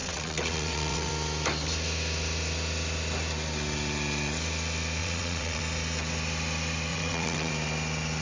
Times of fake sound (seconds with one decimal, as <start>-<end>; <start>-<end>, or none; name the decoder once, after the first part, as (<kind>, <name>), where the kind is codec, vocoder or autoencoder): 0.0-1.1 (vocoder, WaveNeXt); 5.0-5.6; 6.9-7.5